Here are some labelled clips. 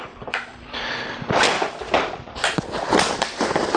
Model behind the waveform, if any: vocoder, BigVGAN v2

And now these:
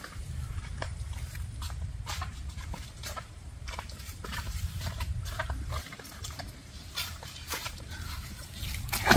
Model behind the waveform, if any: vocoder, BigVGAN v2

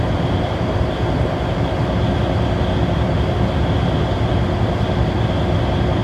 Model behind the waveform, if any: none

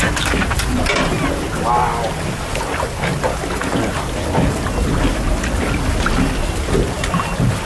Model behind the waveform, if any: none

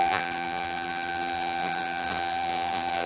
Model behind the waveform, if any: vocoder, BigVGAN v2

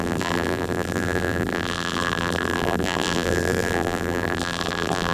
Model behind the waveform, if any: vocoder, BigVGAN v2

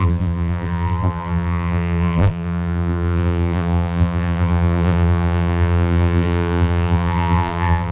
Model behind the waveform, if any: vocoder, BigVGAN v2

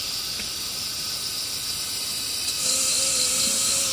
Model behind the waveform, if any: none